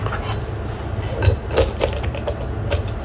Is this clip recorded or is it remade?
recorded